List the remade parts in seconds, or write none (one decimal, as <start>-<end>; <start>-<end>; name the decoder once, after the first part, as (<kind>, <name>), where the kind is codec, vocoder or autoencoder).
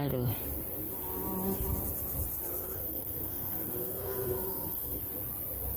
2.6-5.0 (codec, SNAC)